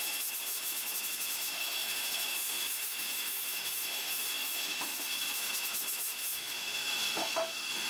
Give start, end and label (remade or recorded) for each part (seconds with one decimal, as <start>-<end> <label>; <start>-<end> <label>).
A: 0.0-7.9 remade

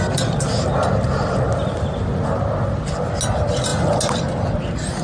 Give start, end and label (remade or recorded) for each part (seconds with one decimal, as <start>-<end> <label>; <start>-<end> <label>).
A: 0.0-5.0 recorded

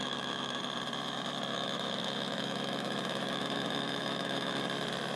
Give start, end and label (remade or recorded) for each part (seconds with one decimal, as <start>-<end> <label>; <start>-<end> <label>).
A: 0.0-0.6 remade; 0.6-1.5 recorded; 1.5-4.6 remade; 4.6-5.2 recorded